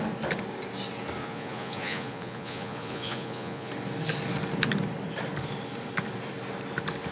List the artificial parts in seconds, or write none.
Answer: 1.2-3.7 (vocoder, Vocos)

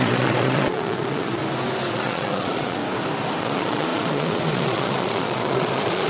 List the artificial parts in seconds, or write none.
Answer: 0.0-1.4 (vocoder, Vocos); 1.9-2.8; 3.4-6.1

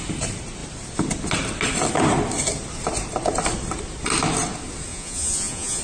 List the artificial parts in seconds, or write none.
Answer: 4.9-5.8 (vocoder, Vocos)